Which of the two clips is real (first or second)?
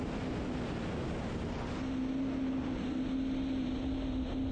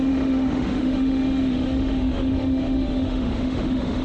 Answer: first